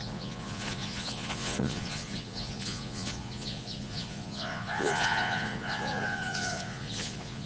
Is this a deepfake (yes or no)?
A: yes